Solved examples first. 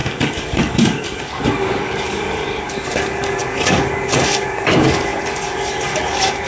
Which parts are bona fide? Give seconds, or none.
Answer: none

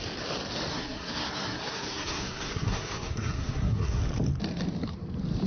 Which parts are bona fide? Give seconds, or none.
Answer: 0.0-0.7; 4.0-5.5

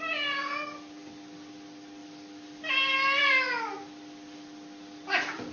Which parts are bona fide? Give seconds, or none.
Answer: 0.0-5.5

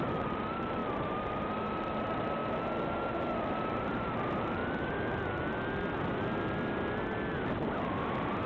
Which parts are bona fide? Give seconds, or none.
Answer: 2.4-3.4; 4.6-7.8

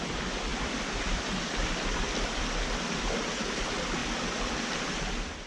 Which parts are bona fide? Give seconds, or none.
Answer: 4.0-4.8